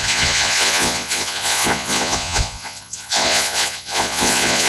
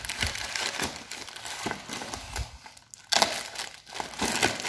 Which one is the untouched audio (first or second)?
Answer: second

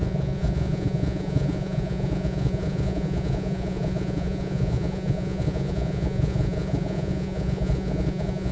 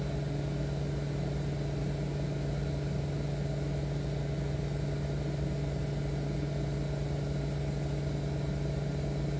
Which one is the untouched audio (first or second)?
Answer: second